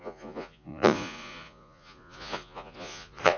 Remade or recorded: remade